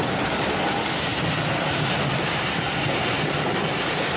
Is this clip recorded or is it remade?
recorded